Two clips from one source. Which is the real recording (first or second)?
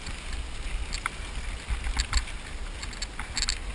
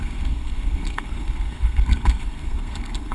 first